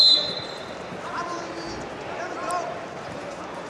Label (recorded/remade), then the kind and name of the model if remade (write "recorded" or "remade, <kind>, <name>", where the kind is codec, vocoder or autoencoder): recorded